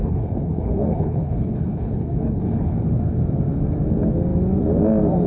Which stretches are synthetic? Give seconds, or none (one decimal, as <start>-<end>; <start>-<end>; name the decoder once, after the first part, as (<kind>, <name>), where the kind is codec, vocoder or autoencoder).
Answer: 0.0-2.7 (codec, HILCodec)